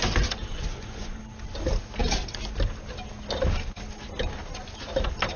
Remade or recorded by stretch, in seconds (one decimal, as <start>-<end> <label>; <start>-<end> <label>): 0.0-0.5 recorded; 0.5-1.2 remade; 1.2-5.4 recorded